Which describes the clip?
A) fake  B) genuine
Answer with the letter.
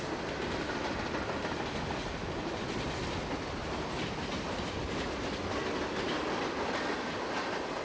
B